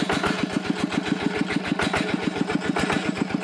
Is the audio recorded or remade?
recorded